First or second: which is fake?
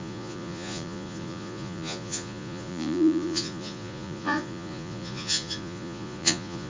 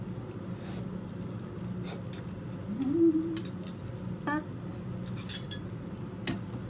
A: first